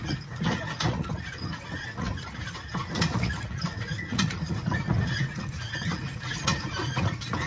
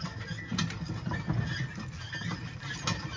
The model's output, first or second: first